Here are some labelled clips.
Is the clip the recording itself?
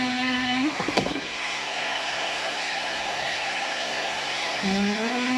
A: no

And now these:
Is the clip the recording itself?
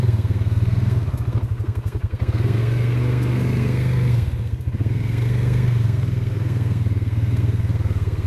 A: no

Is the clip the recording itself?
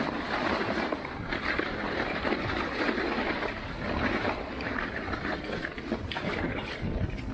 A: yes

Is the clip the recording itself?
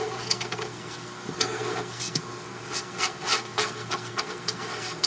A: no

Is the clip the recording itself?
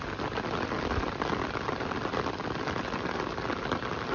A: yes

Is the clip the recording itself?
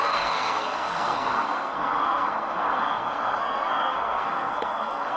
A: no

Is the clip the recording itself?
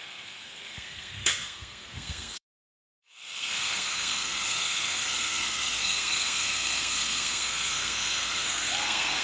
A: no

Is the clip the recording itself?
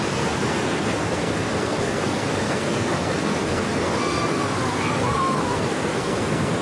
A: no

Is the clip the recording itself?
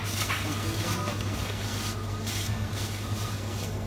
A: no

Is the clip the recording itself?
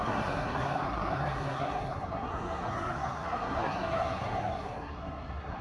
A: no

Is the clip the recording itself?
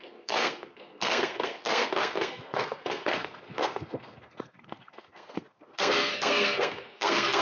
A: no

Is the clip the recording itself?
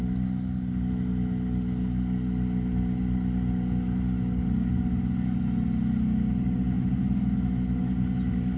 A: yes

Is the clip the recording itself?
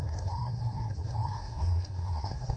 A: no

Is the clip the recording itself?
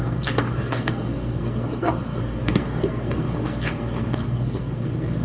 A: no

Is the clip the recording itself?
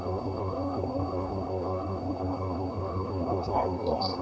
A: no